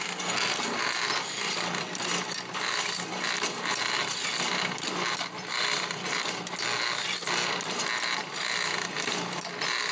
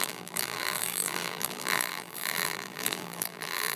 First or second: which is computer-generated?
second